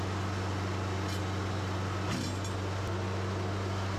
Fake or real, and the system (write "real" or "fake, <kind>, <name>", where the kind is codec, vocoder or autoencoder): real